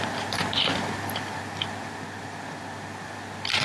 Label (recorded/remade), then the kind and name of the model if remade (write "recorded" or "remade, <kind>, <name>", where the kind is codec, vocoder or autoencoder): recorded